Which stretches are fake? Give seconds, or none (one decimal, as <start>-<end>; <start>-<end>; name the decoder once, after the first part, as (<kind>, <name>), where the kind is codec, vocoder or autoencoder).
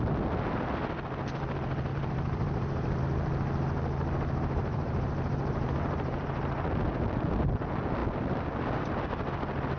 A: 1.9-3.0 (vocoder, BigVGAN v2); 4.6-6.4